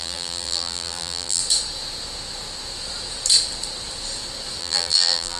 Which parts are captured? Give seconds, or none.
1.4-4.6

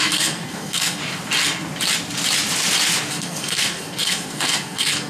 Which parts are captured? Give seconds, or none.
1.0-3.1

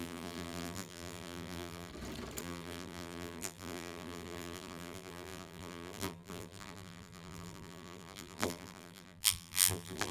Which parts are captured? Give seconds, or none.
1.9-2.4